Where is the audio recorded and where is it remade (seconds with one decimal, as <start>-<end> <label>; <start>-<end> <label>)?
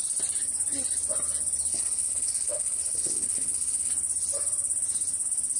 0.0-1.7 recorded; 1.7-3.9 remade; 3.9-5.6 recorded